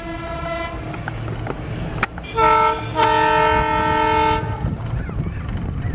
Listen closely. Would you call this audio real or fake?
real